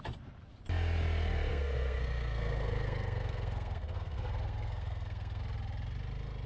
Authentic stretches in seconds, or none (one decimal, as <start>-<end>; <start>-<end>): 0.0-1.5; 5.4-6.5